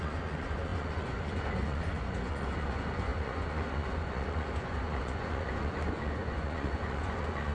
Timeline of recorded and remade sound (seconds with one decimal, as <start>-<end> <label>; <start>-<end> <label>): 0.0-7.5 remade